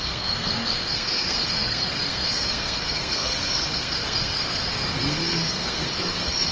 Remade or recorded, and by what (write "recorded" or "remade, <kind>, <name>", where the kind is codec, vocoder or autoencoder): remade, codec, SNAC